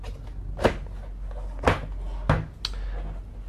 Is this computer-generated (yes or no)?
no